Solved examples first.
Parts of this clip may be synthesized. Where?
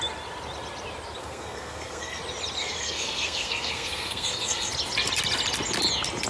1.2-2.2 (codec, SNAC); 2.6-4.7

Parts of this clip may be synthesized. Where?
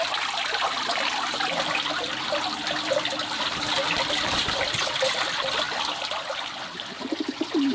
none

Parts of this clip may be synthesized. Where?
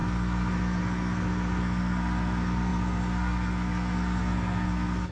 0.0-5.1 (codec, SNAC)